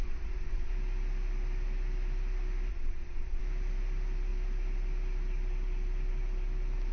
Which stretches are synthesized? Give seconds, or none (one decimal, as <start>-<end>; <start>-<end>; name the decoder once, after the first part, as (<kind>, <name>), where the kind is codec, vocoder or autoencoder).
0.0-0.7 (vocoder, Vocos); 2.7-3.4